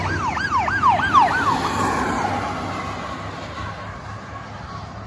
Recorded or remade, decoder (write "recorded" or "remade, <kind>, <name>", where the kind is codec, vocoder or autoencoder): recorded